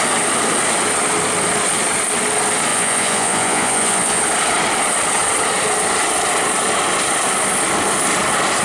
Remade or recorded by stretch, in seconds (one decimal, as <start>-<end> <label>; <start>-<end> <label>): 0.0-2.7 recorded; 2.7-4.2 remade; 4.2-8.6 recorded